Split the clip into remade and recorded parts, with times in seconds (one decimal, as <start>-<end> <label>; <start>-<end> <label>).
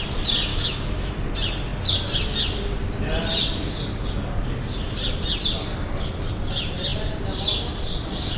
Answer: 0.0-0.5 recorded; 0.5-1.1 remade; 1.1-8.4 recorded